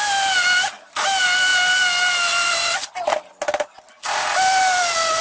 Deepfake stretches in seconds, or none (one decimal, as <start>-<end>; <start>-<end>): none